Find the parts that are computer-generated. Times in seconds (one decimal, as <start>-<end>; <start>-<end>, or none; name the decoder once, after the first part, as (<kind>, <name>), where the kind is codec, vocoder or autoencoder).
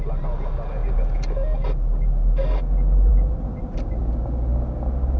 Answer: 3.1-4.0 (vocoder, BigVGAN v2)